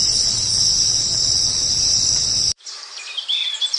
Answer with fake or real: fake